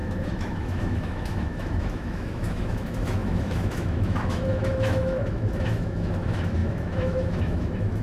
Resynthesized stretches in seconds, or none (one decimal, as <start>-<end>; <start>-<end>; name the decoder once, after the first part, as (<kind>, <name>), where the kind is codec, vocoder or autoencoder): 0.0-8.0 (autoencoder, DAC-VAE)